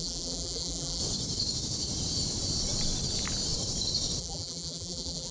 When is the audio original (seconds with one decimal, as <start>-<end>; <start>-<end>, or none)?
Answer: 1.0-4.2